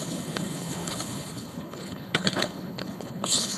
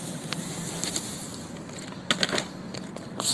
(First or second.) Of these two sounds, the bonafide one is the second